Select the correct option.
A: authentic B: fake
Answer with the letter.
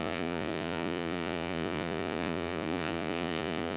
B